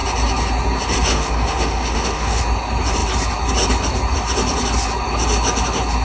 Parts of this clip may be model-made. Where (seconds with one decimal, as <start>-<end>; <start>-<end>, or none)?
1.1-2.4